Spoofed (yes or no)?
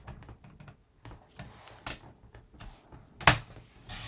no